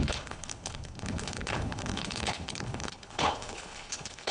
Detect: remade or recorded remade